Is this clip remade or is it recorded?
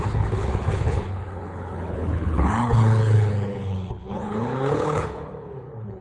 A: remade